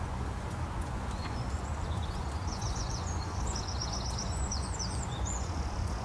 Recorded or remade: remade